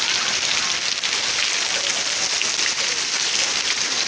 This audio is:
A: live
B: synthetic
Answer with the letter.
A